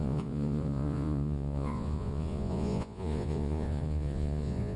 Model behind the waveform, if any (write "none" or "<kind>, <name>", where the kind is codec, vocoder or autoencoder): vocoder, Vocos